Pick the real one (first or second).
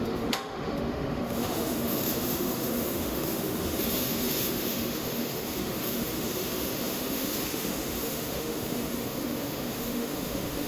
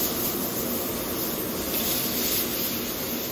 second